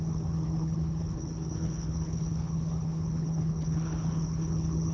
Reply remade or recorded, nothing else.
remade